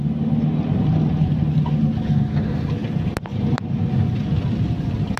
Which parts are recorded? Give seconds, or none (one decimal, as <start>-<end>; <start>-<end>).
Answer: 0.0-5.2